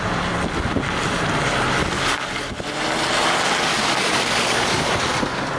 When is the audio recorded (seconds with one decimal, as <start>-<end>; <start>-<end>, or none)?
0.0-1.8; 2.6-3.7; 4.9-5.6